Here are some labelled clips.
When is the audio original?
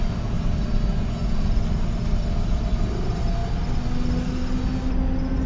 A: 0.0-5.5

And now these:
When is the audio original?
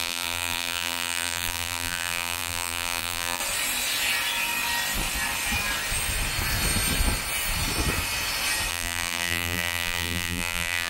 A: 3.4-8.7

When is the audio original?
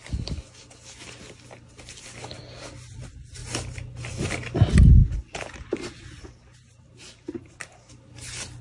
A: 0.0-5.0; 7.9-8.6